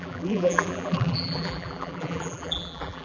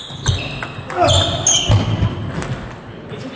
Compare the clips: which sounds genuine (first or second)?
second